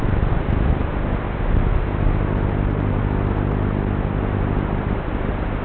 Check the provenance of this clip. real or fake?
real